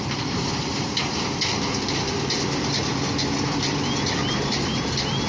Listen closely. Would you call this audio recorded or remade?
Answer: recorded